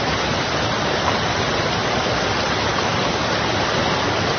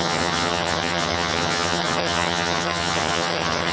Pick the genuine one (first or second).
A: first